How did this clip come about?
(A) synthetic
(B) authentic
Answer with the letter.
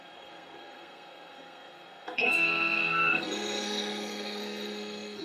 A